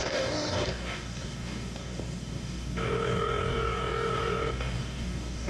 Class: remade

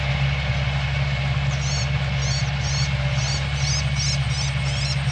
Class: recorded